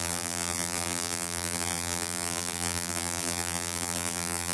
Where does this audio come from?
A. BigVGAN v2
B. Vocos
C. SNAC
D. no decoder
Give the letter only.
A